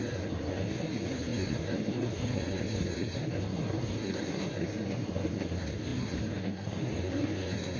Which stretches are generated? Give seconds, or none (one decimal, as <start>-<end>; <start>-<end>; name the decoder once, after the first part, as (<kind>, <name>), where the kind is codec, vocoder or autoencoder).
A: 0.0-7.8 (codec, SNAC)

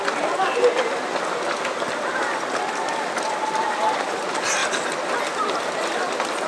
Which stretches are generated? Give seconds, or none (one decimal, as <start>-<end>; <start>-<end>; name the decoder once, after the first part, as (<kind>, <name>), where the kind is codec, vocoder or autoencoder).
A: 1.5-2.1 (vocoder, BigVGAN v2)

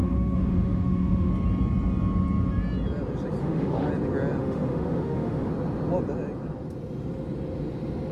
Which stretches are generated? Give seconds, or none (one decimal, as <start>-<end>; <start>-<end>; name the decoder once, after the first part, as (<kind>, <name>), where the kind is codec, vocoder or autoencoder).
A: 0.0-1.3 (autoencoder, DAC-VAE); 3.4-3.9; 4.4-5.5

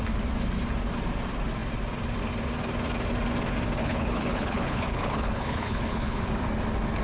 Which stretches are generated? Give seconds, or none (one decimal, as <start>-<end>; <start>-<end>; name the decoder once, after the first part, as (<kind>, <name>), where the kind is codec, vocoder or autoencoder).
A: 3.8-6.3 (codec, HILCodec)

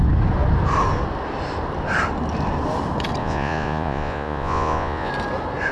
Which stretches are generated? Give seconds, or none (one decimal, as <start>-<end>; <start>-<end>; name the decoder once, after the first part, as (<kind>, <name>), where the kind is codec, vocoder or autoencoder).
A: 3.2-5.1 (vocoder, Vocos)